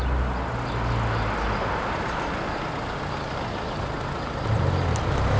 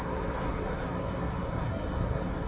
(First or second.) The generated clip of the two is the second